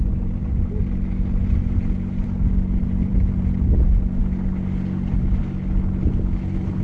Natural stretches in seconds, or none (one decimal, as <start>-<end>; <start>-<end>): 0.0-6.8